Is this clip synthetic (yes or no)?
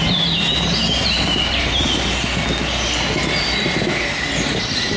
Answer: no